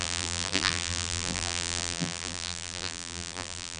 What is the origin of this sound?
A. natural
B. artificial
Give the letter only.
B